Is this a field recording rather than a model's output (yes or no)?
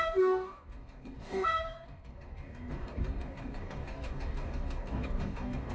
no